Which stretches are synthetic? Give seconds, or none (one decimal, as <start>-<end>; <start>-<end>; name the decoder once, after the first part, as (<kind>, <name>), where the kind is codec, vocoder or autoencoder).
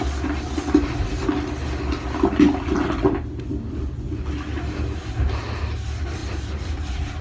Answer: 6.2-7.2 (vocoder, BigVGAN v2)